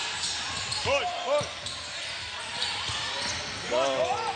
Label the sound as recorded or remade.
recorded